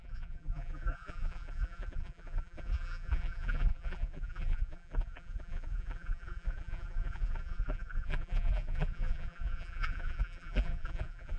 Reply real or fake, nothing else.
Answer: fake